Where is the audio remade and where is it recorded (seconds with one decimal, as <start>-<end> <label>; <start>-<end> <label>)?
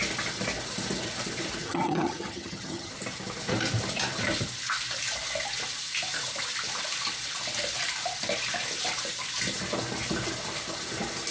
0.0-1.6 recorded; 1.6-2.9 remade; 2.9-11.3 recorded